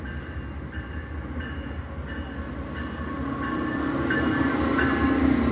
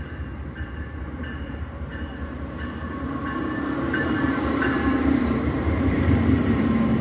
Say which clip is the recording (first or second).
first